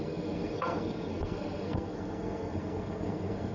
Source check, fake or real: fake